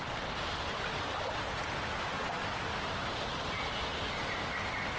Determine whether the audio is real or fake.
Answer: real